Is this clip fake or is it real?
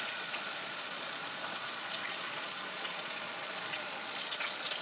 fake